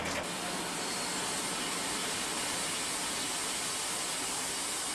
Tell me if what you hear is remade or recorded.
recorded